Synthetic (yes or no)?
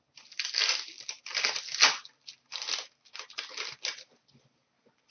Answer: no